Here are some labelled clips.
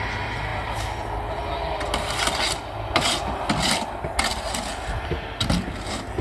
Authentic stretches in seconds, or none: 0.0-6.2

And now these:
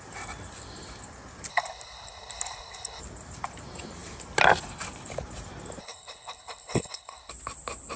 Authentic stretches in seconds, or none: 0.0-1.5; 3.0-5.8; 7.3-8.0

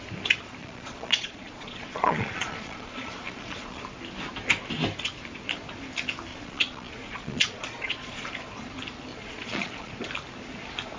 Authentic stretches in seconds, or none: 0.0-0.6; 3.8-6.3; 8.3-9.1; 9.9-11.0

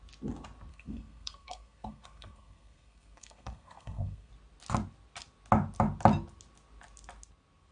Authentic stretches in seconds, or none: 0.0-0.7; 4.3-7.7

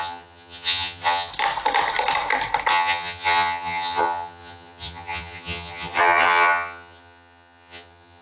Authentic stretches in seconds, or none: 1.3-2.7

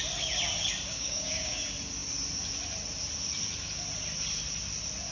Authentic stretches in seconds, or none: 0.0-0.9; 1.6-5.1

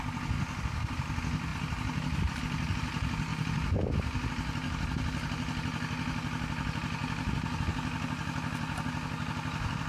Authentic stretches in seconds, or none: 0.0-3.3; 3.9-9.9